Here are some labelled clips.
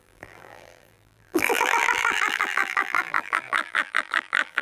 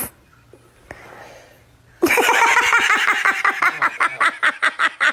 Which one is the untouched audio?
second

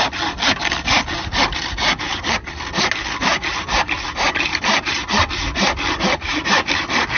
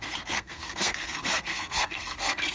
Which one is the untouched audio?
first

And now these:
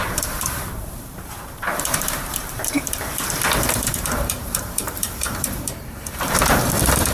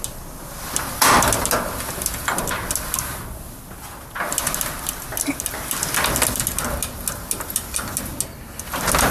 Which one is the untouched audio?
second